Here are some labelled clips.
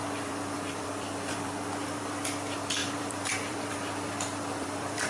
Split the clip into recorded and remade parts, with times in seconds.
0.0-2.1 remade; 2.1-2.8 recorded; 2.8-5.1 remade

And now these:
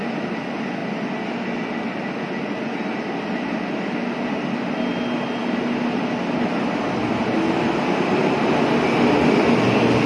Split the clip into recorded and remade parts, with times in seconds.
0.0-10.1 recorded

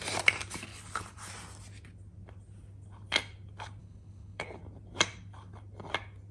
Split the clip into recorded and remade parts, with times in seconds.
0.0-0.7 recorded; 0.7-1.3 remade; 1.3-3.8 recorded; 3.8-4.6 remade; 4.6-6.3 recorded

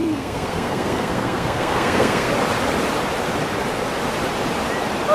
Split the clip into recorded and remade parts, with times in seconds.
0.0-2.3 remade; 2.3-5.1 recorded

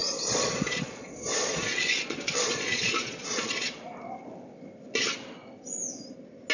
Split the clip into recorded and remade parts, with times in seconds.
0.0-3.9 remade; 3.9-6.5 recorded